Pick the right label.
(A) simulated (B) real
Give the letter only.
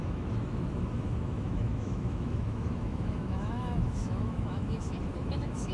A